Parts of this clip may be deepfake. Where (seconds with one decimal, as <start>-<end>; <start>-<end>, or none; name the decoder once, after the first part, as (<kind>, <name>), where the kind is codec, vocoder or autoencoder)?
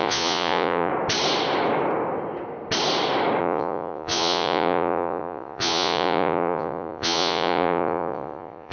0.0-0.9 (vocoder, Vocos); 3.4-8.7